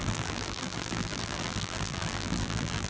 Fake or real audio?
fake